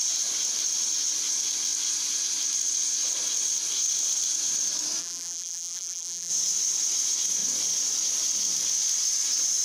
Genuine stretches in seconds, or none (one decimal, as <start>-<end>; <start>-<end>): 0.0-5.0; 6.3-9.6